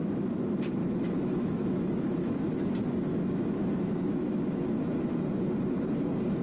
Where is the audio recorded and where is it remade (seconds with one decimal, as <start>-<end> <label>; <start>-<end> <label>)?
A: 0.0-0.8 recorded; 0.8-2.3 remade; 2.3-3.1 recorded; 3.1-4.8 remade; 4.8-6.4 recorded